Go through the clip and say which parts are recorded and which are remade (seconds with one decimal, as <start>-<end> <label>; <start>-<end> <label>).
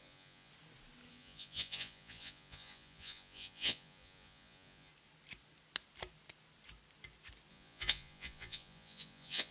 0.0-0.5 remade; 0.5-1.1 recorded; 1.1-4.9 remade; 4.9-7.5 recorded; 7.5-9.5 remade